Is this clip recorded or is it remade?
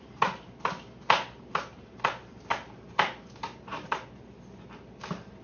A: recorded